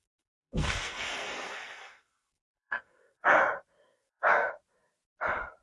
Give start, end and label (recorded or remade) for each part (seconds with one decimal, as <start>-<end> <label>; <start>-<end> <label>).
0.0-3.4 remade; 3.4-3.9 recorded; 3.9-4.5 remade; 4.5-5.6 recorded